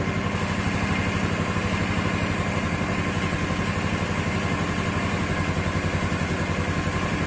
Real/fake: real